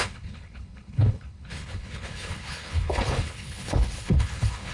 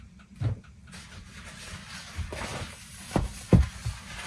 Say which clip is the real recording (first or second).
second